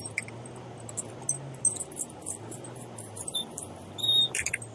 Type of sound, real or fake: real